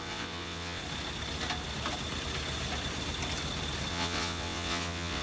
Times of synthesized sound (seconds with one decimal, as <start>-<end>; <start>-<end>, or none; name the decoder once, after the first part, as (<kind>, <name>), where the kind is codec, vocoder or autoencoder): 0.0-0.8 (vocoder, WaveNeXt); 3.9-5.2